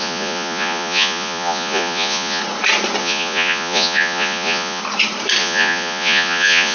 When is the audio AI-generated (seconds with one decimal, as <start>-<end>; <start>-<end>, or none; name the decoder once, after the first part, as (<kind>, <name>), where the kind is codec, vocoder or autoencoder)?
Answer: 0.0-2.4 (vocoder, Vocos); 3.0-4.8; 5.4-6.7